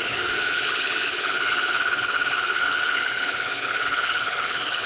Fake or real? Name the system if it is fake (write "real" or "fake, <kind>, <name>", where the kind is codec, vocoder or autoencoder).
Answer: fake, codec, HILCodec